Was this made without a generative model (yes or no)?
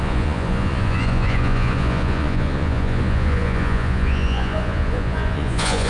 no